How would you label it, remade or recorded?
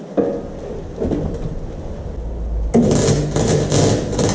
recorded